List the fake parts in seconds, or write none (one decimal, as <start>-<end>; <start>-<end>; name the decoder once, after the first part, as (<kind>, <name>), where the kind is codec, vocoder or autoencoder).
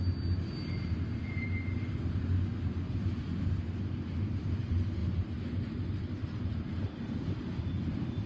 none